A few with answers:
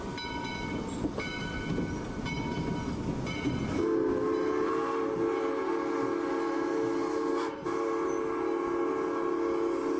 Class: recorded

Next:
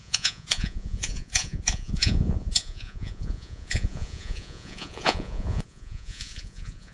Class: remade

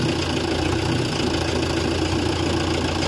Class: recorded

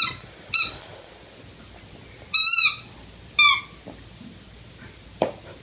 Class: recorded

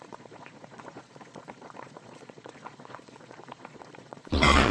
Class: remade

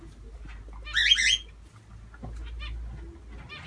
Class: recorded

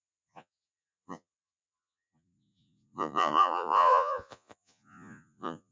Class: remade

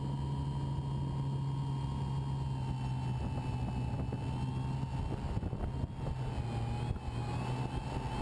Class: recorded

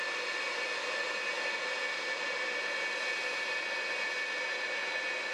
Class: recorded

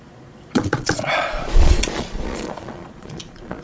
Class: remade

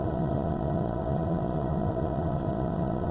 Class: remade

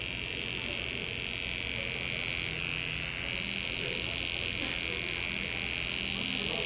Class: recorded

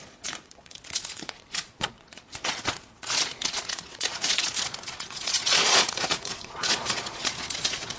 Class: remade